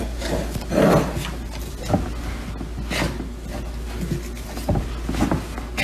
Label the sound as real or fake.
real